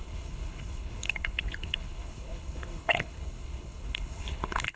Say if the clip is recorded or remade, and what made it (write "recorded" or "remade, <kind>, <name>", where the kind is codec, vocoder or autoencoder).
remade, codec, HILCodec